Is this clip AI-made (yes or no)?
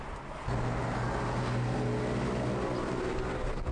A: no